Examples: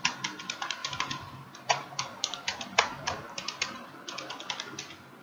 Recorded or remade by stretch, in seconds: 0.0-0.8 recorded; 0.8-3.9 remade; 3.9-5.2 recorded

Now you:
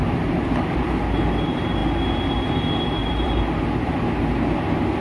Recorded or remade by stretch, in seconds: 0.0-3.0 recorded; 3.0-3.6 remade; 3.6-5.0 recorded